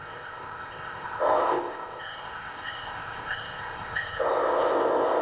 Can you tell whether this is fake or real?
fake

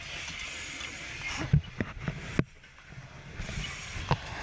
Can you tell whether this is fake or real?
real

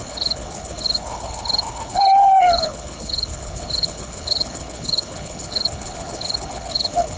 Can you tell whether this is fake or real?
fake